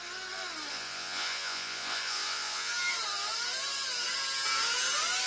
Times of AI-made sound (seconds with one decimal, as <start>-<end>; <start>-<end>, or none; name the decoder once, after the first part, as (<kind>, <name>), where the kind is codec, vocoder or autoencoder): 0.7-2.7 (vocoder, Vocos)